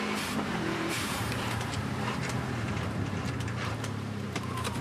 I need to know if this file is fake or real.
fake